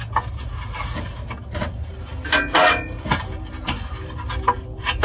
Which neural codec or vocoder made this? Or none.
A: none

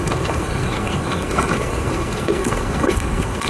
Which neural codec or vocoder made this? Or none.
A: codec, SNAC